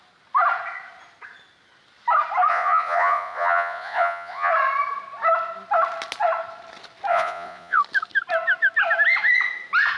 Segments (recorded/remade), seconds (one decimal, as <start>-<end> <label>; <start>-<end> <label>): 0.0-2.5 recorded; 2.5-4.5 remade; 4.5-7.1 recorded; 7.1-7.8 remade; 7.8-10.0 recorded